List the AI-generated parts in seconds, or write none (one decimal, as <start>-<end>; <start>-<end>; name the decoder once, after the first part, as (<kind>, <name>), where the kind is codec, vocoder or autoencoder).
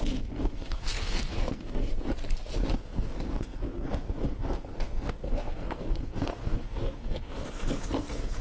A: 0.0-1.9 (codec, SNAC); 2.7-8.4